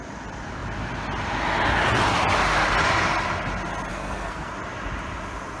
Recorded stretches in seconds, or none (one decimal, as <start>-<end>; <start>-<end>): 0.0-3.9; 4.5-5.6